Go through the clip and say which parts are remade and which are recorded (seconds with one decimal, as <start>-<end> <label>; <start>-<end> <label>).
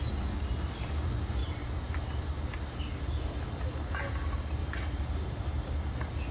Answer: 0.0-1.4 recorded; 1.4-2.9 remade; 2.9-4.6 recorded; 4.6-5.5 remade; 5.5-6.3 recorded